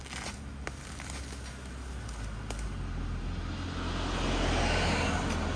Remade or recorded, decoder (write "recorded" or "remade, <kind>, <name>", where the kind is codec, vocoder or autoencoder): recorded